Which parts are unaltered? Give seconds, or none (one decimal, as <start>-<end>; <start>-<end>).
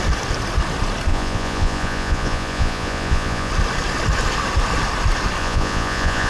0.0-1.1; 3.5-5.4